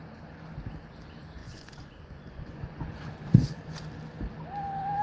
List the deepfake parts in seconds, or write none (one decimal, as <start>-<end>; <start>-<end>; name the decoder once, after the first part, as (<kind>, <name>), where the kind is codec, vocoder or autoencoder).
1.4-3.8 (vocoder, Vocos)